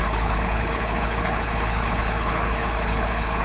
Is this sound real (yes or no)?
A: no